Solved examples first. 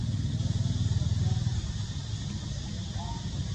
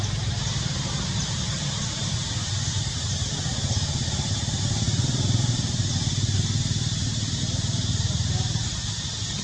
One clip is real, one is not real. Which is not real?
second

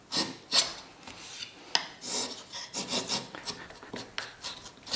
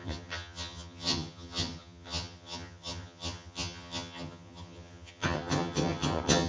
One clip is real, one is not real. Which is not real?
second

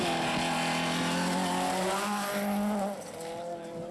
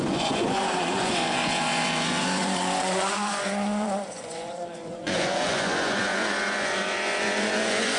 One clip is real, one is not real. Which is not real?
second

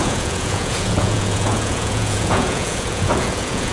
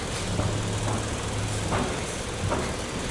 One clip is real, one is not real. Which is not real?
first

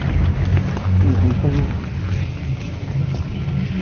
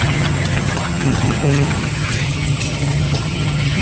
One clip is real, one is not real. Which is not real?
second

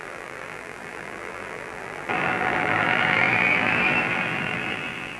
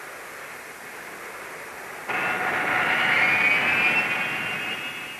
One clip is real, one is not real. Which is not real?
first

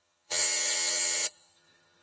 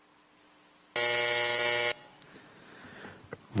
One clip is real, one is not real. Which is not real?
first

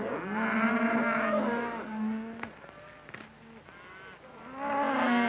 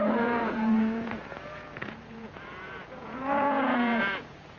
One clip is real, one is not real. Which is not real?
second